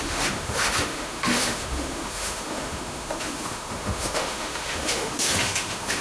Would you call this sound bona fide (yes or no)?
no